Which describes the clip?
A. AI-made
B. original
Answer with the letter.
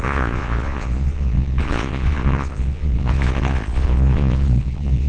A